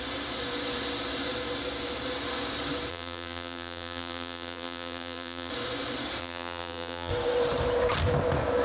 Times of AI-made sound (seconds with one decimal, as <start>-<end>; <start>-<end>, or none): 2.9-5.5; 6.2-7.1